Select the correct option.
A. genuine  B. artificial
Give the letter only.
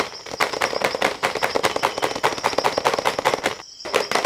A